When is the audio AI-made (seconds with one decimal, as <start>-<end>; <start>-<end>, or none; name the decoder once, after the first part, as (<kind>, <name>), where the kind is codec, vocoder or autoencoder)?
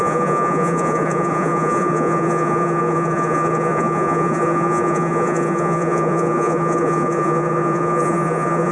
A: 0.0-8.7 (vocoder, Vocos)